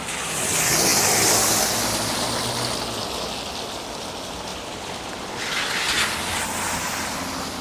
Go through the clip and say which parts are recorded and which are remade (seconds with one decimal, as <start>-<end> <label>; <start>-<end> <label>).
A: 0.0-7.6 recorded